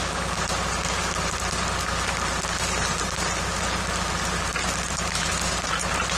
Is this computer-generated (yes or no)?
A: no